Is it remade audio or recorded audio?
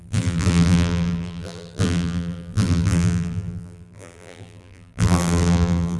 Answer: remade